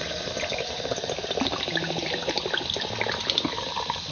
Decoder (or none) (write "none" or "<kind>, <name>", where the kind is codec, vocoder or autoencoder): none